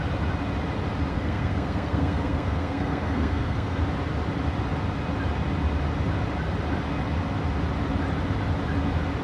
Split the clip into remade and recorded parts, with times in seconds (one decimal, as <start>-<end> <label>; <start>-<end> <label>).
0.0-1.1 recorded; 1.1-3.8 remade; 3.8-9.2 recorded